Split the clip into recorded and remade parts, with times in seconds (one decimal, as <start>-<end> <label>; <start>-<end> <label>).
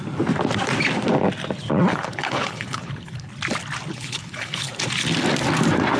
0.0-1.9 recorded; 1.9-3.3 remade; 3.3-3.9 recorded; 3.9-4.7 remade; 4.7-6.0 recorded